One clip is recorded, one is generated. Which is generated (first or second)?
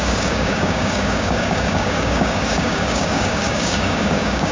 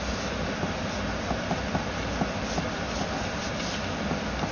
first